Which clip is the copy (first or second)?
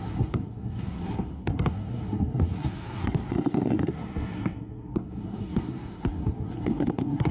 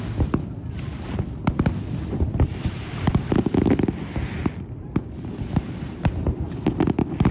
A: first